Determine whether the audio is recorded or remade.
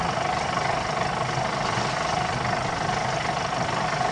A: recorded